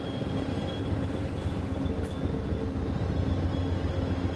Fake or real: real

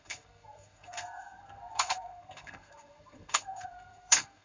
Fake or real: fake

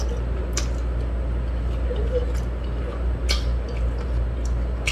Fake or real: real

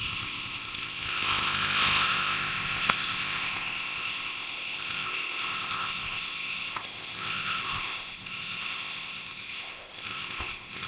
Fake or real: fake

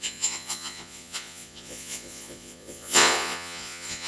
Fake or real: fake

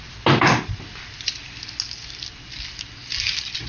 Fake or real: real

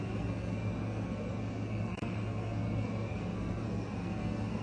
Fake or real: fake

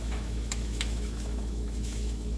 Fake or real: fake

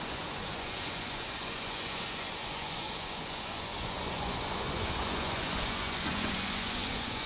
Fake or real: fake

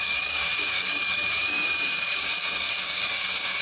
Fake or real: fake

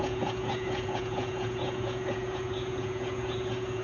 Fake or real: fake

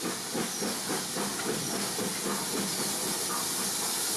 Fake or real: real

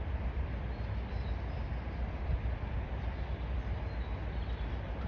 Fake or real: real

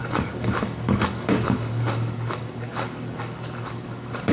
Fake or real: fake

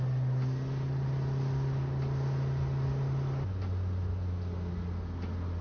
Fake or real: real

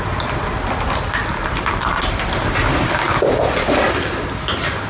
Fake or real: real